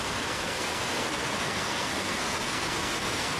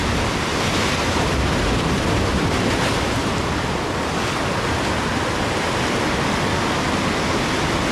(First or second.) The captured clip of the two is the second